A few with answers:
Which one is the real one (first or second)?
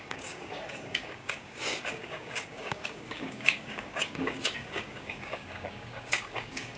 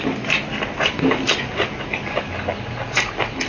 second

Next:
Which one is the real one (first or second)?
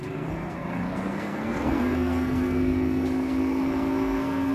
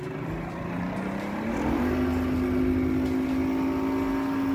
second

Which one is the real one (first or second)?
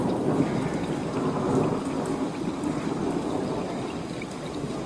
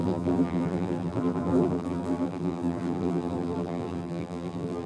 first